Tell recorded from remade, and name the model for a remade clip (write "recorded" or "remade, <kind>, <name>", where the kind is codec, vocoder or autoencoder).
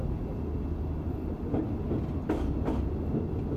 recorded